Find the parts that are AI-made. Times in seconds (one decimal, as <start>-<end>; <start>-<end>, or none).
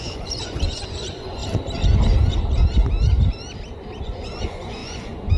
0.0-1.4; 4.0-5.4